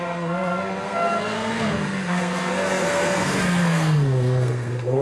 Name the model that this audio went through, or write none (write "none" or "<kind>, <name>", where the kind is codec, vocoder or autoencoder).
codec, SNAC